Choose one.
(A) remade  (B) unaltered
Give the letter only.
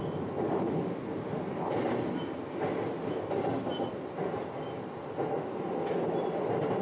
B